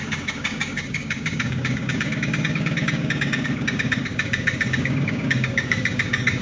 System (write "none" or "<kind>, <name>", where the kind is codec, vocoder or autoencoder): codec, DAC